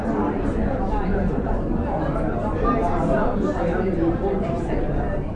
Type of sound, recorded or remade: remade